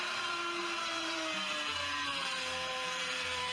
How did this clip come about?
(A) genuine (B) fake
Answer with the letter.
B